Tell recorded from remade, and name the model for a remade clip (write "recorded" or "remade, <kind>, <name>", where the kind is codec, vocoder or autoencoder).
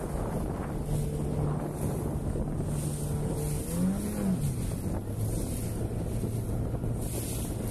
recorded